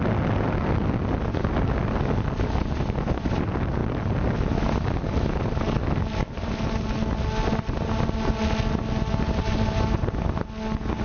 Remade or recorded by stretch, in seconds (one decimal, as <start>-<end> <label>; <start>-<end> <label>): 0.0-11.0 recorded